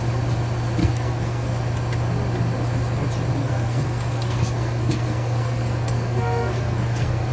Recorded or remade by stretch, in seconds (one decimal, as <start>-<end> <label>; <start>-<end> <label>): 0.0-0.8 recorded; 0.8-1.5 remade; 1.5-3.4 recorded; 3.4-7.3 remade